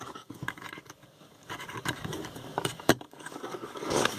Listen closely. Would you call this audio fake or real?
fake